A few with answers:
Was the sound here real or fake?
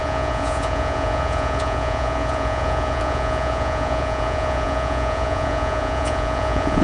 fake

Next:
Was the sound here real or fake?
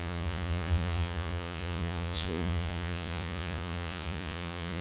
fake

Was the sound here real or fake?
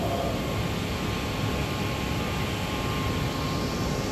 real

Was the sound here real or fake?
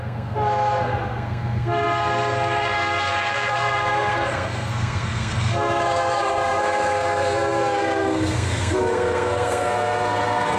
fake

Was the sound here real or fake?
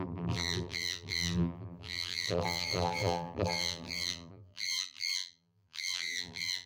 fake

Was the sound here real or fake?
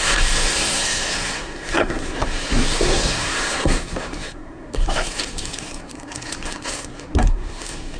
fake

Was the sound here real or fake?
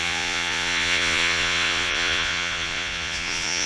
fake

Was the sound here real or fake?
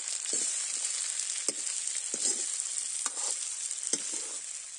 real